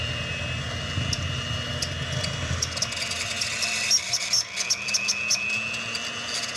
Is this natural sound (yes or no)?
yes